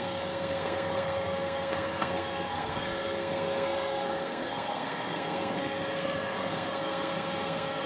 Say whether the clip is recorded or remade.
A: remade